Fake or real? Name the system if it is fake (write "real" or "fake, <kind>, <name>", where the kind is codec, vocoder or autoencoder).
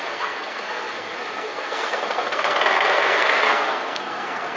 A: fake, codec, SNAC